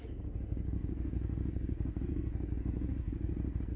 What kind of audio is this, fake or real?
fake